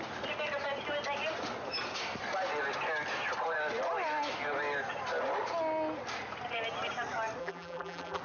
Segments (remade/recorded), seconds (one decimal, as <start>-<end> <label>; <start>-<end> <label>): 0.0-7.4 recorded; 7.4-8.2 remade

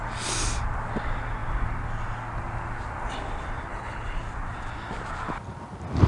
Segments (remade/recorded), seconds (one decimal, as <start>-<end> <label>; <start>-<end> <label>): 0.0-3.7 recorded; 3.7-4.2 remade; 4.2-6.1 recorded